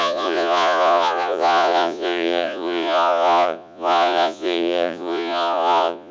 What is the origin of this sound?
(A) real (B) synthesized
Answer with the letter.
B